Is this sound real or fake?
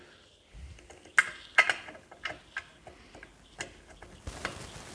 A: real